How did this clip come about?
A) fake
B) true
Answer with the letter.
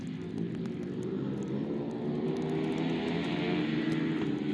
B